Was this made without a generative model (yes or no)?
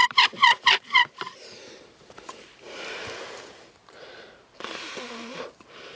no